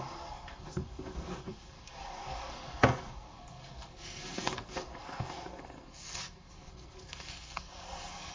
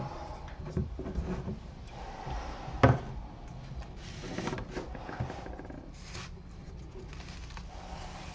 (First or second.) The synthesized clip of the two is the first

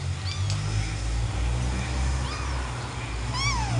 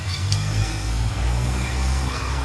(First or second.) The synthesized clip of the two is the second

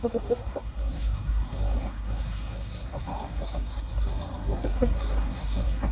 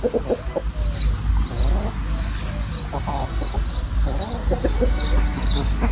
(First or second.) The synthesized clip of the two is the first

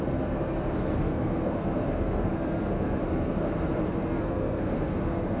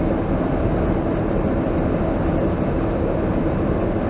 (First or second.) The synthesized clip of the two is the first